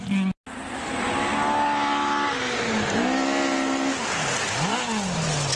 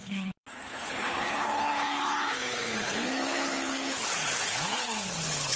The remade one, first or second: second